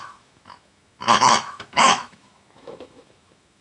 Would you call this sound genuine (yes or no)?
no